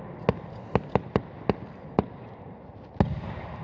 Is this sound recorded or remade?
recorded